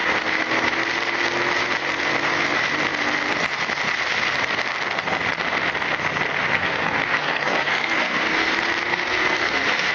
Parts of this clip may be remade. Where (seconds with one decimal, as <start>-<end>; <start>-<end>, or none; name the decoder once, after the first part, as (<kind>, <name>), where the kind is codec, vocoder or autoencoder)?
6.5-8.5 (codec, SNAC); 8.9-9.9